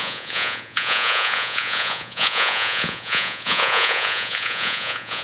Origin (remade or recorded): remade